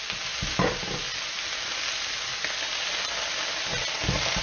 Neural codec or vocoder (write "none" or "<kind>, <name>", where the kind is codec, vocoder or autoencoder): none